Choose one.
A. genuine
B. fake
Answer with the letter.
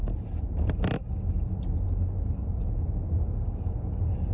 A